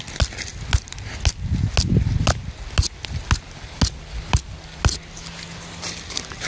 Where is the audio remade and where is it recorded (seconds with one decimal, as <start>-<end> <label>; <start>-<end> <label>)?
0.0-6.5 recorded